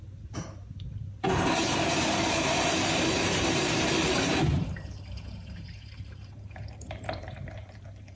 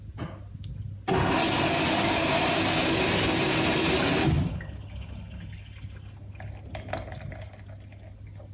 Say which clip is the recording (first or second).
second